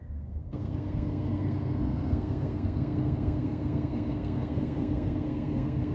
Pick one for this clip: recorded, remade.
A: remade